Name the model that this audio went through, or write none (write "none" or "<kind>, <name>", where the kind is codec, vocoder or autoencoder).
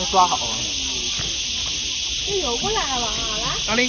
none